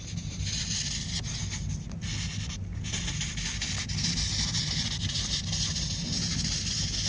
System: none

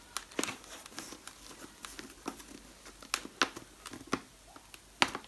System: none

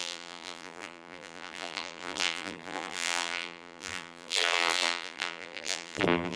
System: vocoder, BigVGAN v2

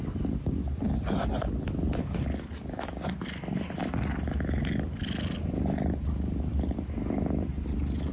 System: none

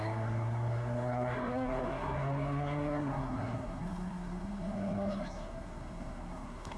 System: codec, SNAC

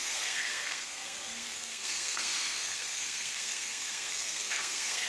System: codec, SNAC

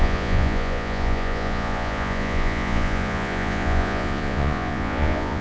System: vocoder, Vocos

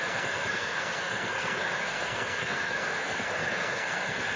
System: codec, SNAC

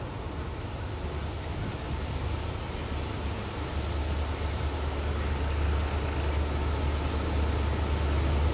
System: none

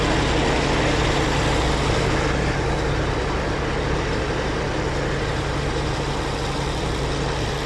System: none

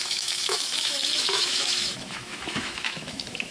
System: autoencoder, DAC-VAE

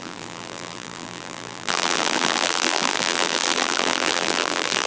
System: vocoder, BigVGAN v2